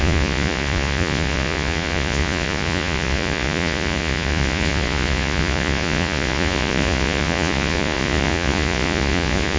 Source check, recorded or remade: remade